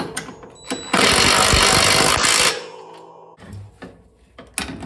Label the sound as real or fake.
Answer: real